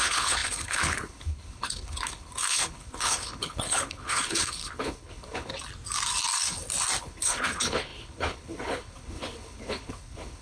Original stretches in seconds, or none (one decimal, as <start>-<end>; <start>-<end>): 5.5-7.0